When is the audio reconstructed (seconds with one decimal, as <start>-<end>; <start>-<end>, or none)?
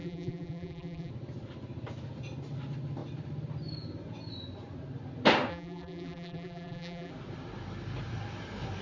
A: 0.0-1.1; 5.5-7.1